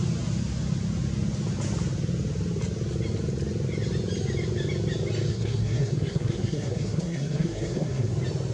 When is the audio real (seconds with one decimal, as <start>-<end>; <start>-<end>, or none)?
0.0-5.3; 8.1-8.5